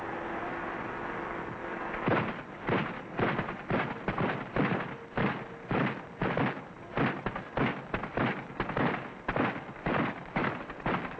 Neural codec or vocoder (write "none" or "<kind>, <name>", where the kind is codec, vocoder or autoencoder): none